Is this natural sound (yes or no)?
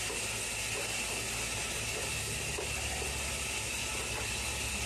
yes